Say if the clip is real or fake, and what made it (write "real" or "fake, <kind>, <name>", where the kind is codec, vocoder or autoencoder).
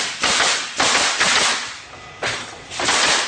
real